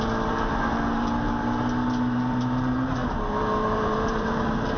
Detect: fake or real fake